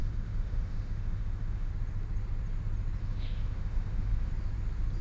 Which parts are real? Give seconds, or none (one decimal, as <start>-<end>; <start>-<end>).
1.7-3.0; 4.3-5.0